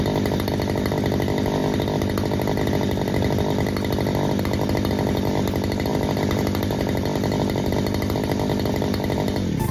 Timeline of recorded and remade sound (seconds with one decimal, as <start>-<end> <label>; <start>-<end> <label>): 0.0-9.7 recorded